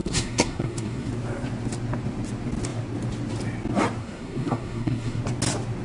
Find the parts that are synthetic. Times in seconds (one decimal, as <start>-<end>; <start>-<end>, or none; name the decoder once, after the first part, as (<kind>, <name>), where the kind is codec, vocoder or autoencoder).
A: 0.0-1.1 (codec, SNAC); 4.0-5.2

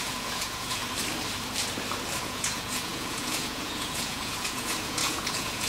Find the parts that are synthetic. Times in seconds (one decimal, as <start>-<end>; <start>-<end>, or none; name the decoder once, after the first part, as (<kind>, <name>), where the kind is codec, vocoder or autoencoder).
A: 0.0-0.8 (vocoder, Vocos); 2.2-5.7